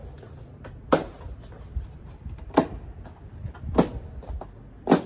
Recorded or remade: recorded